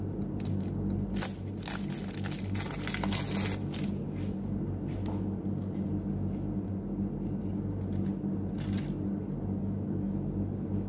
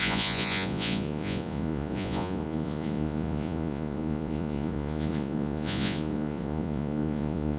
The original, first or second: first